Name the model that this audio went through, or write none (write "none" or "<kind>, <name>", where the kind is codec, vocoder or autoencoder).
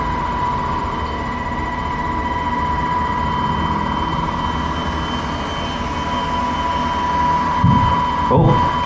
none